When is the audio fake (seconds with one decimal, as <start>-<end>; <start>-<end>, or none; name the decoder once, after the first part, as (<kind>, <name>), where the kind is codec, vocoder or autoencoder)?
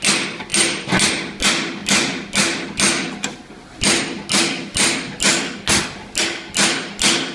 none